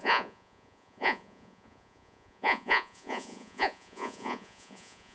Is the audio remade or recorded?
remade